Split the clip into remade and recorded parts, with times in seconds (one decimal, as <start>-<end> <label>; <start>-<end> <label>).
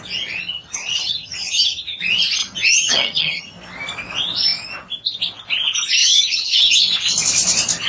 0.0-0.5 recorded; 0.5-2.0 remade; 2.0-2.4 recorded; 2.4-3.5 remade; 3.5-6.0 recorded; 6.0-6.8 remade; 6.8-7.9 recorded